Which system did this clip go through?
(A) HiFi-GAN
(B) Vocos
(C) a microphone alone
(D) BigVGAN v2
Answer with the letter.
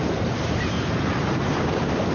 D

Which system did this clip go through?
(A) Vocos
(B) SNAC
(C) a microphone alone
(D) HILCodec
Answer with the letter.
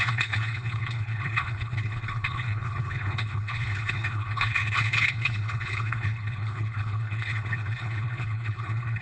D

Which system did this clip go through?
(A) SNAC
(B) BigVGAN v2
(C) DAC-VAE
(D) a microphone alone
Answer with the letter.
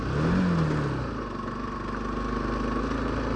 D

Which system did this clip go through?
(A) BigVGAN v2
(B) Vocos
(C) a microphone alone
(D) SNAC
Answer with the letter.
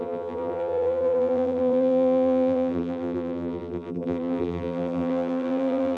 A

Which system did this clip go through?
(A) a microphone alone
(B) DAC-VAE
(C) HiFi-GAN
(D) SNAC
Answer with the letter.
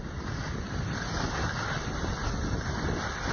A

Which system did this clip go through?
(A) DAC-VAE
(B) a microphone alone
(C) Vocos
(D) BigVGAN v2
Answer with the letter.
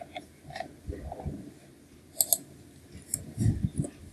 B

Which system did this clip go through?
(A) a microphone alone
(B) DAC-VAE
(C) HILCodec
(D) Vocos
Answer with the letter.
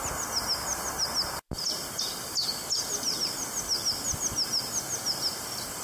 A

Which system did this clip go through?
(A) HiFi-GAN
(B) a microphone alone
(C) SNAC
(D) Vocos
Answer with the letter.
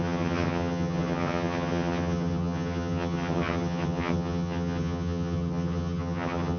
A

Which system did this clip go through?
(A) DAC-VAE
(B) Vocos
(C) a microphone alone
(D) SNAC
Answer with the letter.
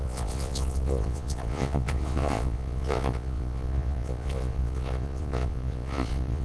B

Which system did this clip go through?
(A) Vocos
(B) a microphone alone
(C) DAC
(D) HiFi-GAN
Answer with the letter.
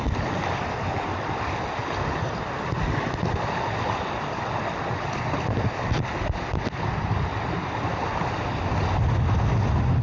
B